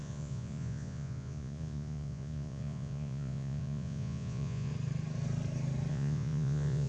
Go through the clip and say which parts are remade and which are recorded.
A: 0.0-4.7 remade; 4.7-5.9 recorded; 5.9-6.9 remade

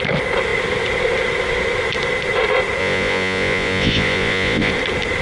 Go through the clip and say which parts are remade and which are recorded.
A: 0.0-2.8 recorded; 2.8-4.7 remade; 4.7-5.2 recorded

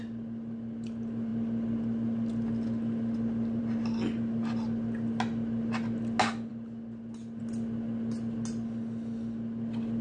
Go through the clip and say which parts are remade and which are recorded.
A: 0.0-10.0 recorded

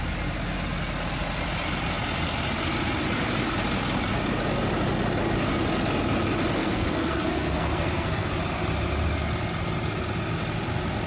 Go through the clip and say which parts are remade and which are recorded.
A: 0.0-6.6 recorded; 6.6-8.3 remade; 8.3-11.1 recorded